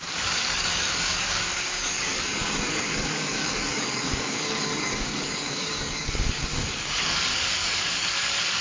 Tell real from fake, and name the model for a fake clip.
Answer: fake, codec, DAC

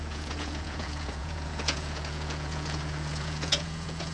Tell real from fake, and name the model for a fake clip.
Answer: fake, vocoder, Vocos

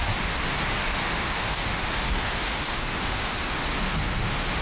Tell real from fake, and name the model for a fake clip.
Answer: fake, autoencoder, DAC-VAE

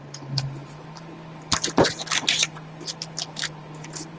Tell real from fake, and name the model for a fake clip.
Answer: real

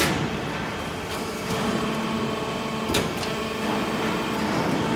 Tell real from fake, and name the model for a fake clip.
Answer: real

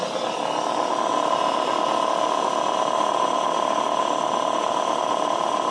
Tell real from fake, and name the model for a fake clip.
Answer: real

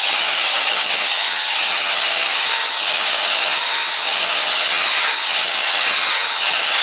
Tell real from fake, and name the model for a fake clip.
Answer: fake, vocoder, HiFi-GAN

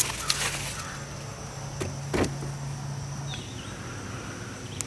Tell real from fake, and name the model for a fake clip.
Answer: real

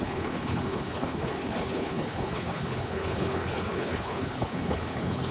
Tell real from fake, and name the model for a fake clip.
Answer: fake, codec, HILCodec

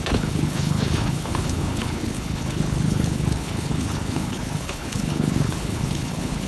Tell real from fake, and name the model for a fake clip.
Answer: fake, codec, HILCodec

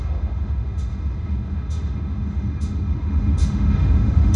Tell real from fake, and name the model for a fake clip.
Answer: fake, autoencoder, DAC-VAE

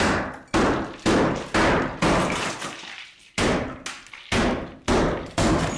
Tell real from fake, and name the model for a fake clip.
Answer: real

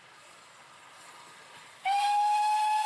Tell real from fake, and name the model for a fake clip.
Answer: real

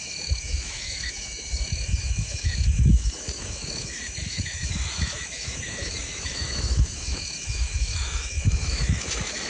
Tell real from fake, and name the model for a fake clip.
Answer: fake, autoencoder, DAC-VAE